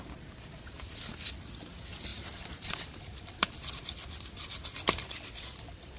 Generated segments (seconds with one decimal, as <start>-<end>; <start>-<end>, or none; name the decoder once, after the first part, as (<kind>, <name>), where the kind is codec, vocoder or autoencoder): 2.1-3.7 (vocoder, BigVGAN v2)

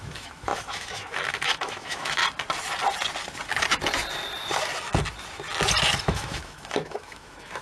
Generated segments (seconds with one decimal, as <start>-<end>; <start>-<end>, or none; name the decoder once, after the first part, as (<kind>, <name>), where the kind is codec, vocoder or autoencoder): 0.0-2.2 (autoencoder, DAC-VAE); 6.0-7.6

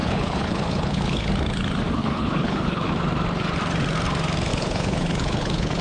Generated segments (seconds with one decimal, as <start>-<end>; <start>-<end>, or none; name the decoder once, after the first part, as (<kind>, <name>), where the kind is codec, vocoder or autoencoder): 0.0-1.3 (codec, HILCodec); 2.0-2.9; 4.5-5.8

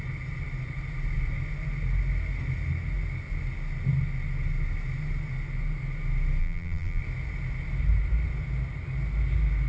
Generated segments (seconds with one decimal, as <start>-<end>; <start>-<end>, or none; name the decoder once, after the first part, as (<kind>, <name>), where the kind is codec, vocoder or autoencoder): 6.4-7.0 (vocoder, BigVGAN v2)

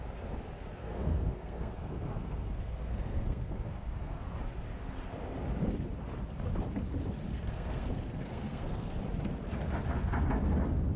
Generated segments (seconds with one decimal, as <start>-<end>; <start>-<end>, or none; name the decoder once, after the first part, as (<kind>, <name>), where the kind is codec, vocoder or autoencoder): 0.8-4.2 (codec, SNAC); 7.3-9.0

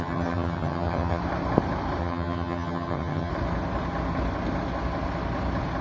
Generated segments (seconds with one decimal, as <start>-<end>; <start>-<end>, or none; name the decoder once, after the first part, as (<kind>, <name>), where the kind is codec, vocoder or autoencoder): 0.0-1.2 (vocoder, HiFi-GAN); 2.0-3.3

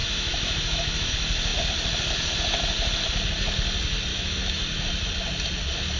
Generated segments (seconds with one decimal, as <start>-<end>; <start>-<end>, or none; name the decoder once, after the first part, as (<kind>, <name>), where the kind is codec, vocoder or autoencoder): 0.0-1.1 (autoencoder, DAC-VAE); 4.1-4.6